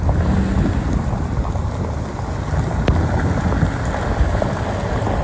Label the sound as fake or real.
real